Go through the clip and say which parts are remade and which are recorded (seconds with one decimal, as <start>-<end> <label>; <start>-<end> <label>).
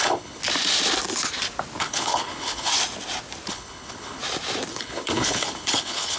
0.0-0.4 remade; 0.4-1.8 recorded; 1.8-2.7 remade; 2.7-3.5 recorded; 3.5-4.2 remade; 4.2-4.7 recorded; 4.7-6.2 remade